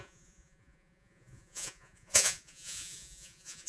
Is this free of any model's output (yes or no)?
no